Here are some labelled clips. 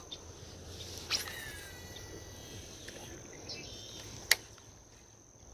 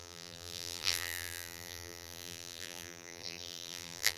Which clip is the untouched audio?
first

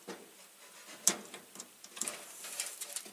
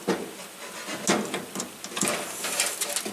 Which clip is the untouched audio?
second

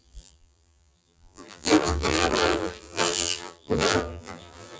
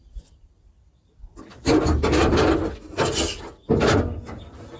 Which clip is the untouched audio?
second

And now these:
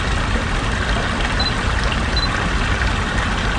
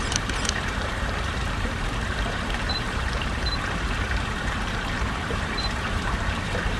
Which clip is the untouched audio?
first